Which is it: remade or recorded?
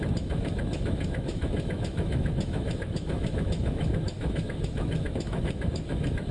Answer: remade